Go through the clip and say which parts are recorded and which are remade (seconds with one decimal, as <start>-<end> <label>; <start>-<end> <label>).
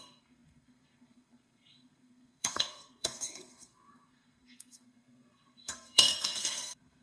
0.0-7.0 remade